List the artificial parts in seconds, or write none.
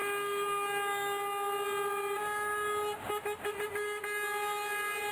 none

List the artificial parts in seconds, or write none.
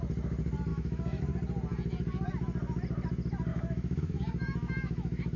0.7-1.2 (autoencoder, DAC-VAE); 3.5-5.4